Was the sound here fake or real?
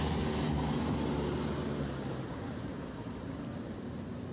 real